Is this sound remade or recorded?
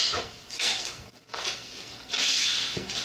remade